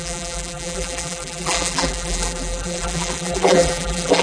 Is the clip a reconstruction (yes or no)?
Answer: yes